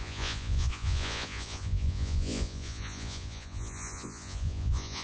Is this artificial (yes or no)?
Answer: yes